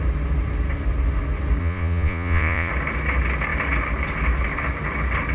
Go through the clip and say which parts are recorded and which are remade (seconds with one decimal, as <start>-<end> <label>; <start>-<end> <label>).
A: 0.0-1.6 recorded; 1.6-2.7 remade; 2.7-5.3 recorded